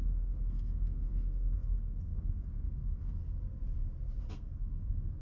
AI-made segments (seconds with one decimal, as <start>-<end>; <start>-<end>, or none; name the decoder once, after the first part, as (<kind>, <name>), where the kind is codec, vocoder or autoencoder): 0.0-3.2 (codec, SNAC); 4.3-5.2